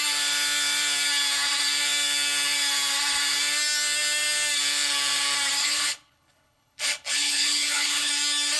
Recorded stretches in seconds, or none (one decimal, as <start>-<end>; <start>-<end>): 0.0-5.6; 8.1-8.6